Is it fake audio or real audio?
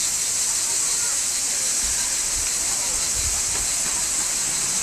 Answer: real